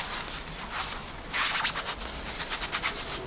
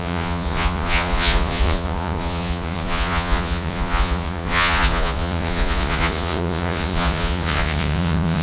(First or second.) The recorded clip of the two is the first